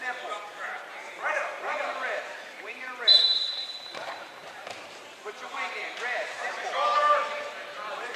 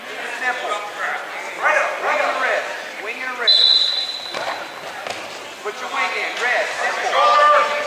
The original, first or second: second